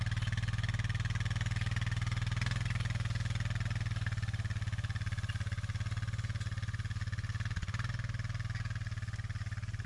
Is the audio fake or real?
real